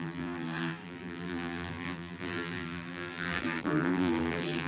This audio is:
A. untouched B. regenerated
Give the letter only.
B